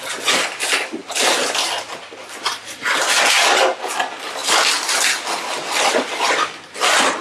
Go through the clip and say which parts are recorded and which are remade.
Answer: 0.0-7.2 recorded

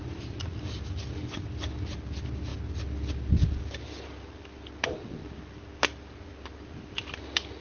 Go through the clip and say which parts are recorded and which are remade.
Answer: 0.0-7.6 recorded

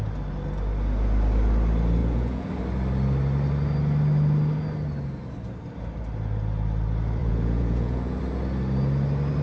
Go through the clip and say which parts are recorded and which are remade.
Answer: 0.0-2.0 recorded; 2.0-2.5 remade; 2.5-7.2 recorded; 7.2-8.2 remade; 8.2-9.4 recorded

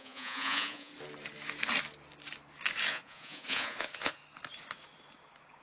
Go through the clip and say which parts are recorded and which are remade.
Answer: 0.0-0.9 remade; 0.9-2.9 recorded; 2.9-4.2 remade; 4.2-5.6 recorded

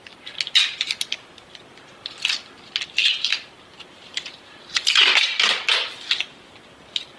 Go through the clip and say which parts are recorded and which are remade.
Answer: 0.0-3.0 recorded; 3.0-4.6 remade; 4.6-7.2 recorded

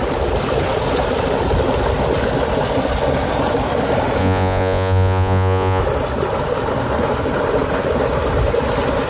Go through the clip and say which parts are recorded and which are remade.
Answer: 0.0-4.2 recorded; 4.2-5.8 remade; 5.8-9.1 recorded